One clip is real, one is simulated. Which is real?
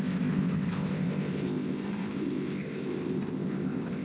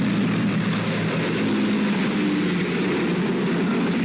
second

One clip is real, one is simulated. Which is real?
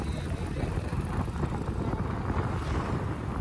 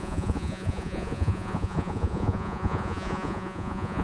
first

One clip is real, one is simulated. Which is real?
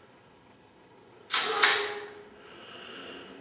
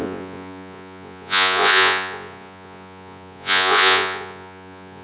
first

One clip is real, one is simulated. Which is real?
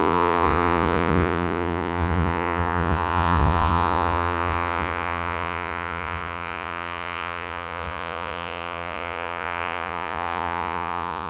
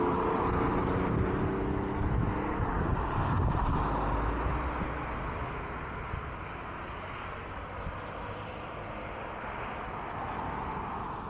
second